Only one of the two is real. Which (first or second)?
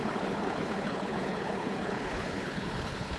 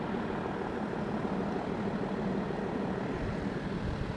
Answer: second